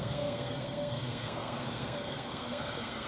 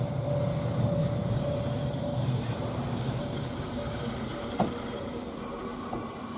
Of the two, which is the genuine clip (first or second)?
second